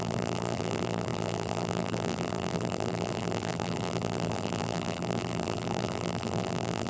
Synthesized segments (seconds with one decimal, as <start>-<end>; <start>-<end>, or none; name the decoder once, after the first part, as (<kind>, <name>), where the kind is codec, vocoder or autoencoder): 0.0-6.9 (vocoder, BigVGAN v2)